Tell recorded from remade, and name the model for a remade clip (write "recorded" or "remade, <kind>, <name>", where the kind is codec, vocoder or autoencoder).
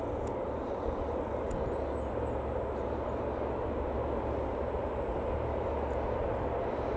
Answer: recorded